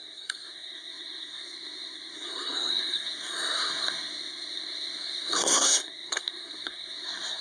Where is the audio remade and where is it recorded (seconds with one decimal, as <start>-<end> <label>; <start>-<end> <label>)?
0.0-7.4 remade